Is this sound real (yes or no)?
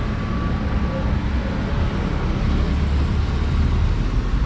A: yes